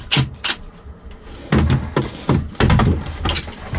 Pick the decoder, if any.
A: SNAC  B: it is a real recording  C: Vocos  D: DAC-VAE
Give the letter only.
B